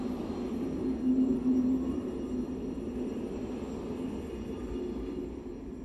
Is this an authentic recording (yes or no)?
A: yes